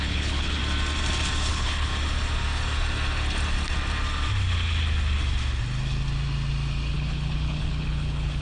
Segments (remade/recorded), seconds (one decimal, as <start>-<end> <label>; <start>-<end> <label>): 0.0-0.6 remade; 0.6-1.5 recorded; 1.5-1.9 remade; 1.9-6.9 recorded; 6.9-8.4 remade